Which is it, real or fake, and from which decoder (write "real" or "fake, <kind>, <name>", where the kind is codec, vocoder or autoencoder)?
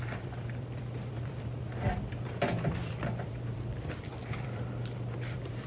fake, vocoder, BigVGAN v2